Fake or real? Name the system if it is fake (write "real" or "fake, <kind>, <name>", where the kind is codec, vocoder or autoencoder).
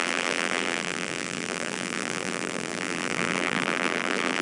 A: fake, vocoder, BigVGAN v2